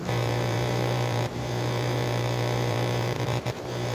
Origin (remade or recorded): remade